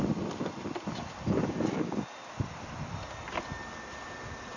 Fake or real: real